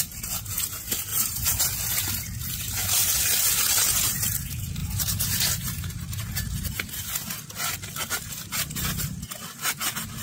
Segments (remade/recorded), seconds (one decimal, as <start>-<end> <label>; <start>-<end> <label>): 0.0-1.1 recorded; 1.1-1.6 remade; 1.6-10.2 recorded

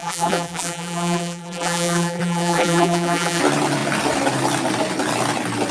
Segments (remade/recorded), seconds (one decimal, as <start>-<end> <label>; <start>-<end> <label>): 0.0-3.4 remade; 3.4-5.7 recorded

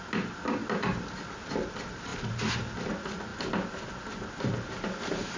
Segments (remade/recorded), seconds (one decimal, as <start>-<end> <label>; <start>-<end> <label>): 0.0-5.4 recorded

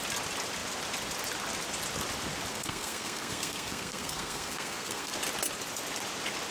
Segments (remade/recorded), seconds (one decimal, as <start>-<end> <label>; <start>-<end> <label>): 0.0-2.5 recorded; 2.5-5.1 remade; 5.1-6.5 recorded

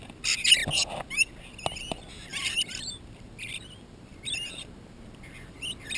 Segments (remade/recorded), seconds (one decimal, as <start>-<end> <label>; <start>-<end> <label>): 0.0-2.3 recorded; 2.3-6.0 remade

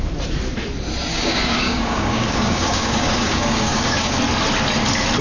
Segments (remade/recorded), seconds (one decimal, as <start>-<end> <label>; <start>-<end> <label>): 0.0-1.1 recorded; 1.1-4.2 remade; 4.2-5.2 recorded